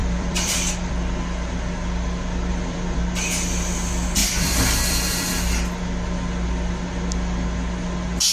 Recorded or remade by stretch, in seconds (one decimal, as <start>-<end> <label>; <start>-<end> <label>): 0.0-0.9 remade; 0.9-2.5 recorded; 2.5-3.0 remade; 3.0-4.2 recorded; 4.2-5.3 remade; 5.3-8.3 recorded